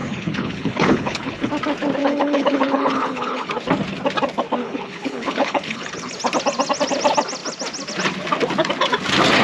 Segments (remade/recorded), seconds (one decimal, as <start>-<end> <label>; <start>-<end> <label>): 0.0-1.5 remade; 1.5-2.0 recorded; 2.0-3.5 remade; 3.5-4.6 recorded; 4.6-6.1 remade; 6.1-9.4 recorded